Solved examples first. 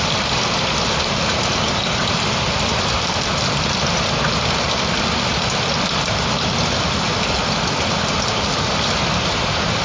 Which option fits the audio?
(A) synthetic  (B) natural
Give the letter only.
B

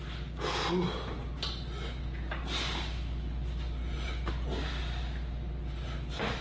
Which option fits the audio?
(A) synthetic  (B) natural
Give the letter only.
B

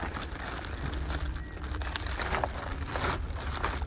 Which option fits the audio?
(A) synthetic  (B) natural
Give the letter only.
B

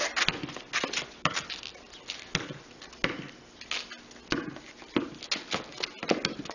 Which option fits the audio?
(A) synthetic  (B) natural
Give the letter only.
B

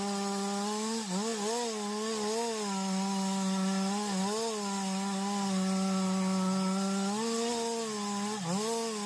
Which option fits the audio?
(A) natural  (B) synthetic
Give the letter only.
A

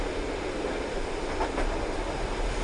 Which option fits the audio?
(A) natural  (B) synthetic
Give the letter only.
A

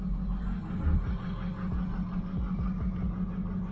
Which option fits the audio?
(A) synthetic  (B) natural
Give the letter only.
B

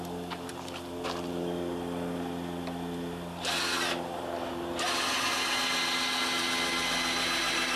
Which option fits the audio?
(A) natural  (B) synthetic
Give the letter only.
A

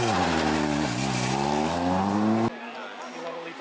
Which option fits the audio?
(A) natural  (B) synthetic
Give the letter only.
A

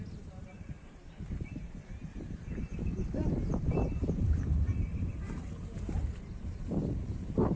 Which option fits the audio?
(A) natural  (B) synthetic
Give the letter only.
B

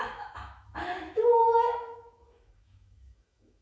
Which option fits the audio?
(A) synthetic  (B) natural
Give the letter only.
A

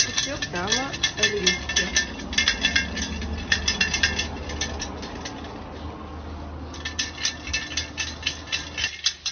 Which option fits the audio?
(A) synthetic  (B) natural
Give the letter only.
B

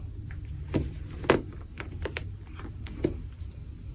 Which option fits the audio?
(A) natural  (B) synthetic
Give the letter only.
A